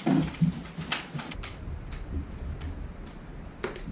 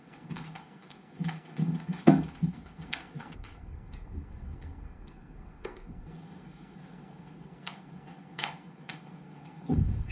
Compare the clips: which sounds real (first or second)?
first